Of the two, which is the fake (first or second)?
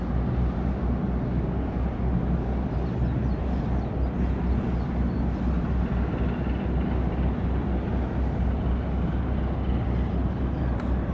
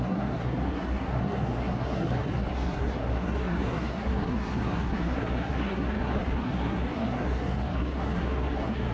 second